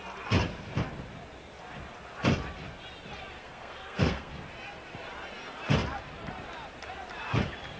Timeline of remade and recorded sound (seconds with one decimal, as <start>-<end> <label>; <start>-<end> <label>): 0.0-3.4 recorded; 3.4-4.3 remade; 4.3-7.8 recorded